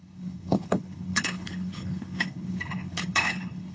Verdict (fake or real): fake